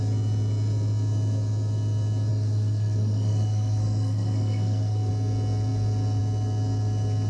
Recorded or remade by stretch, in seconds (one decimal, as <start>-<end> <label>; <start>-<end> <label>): 0.0-2.3 recorded; 2.3-5.1 remade; 5.1-7.3 recorded